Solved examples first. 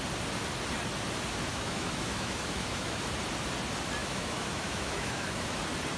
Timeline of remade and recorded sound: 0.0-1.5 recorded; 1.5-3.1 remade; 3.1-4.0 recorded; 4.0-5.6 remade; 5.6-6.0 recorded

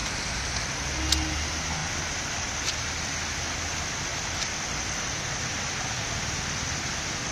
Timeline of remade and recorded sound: 0.0-7.3 recorded

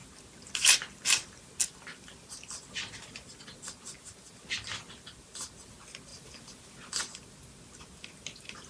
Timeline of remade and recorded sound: 0.0-8.7 recorded

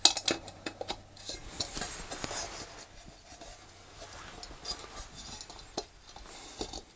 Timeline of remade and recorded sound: 0.0-7.0 recorded

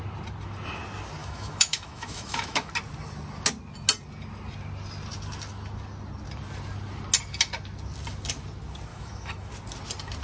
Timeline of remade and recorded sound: 0.0-1.2 recorded; 1.2-2.7 remade; 2.7-8.9 recorded; 8.9-9.5 remade; 9.5-10.2 recorded